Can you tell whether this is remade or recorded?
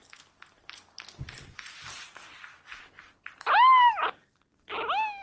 recorded